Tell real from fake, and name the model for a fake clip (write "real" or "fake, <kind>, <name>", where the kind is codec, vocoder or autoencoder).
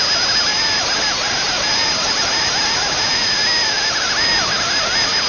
real